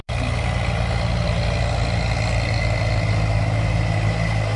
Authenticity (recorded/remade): recorded